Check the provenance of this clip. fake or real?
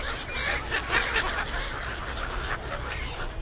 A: real